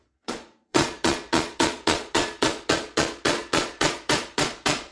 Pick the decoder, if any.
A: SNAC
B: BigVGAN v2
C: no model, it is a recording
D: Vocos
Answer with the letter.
D